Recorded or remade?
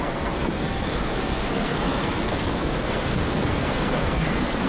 remade